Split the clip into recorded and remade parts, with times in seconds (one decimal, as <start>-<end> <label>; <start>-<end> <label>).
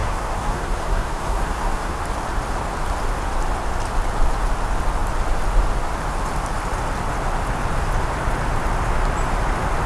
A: 0.0-2.0 remade; 2.0-9.9 recorded